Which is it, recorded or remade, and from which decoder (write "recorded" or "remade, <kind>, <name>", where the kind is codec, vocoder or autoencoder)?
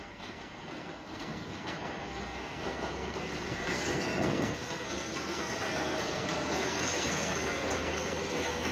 remade, codec, SNAC